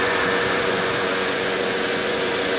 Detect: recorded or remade remade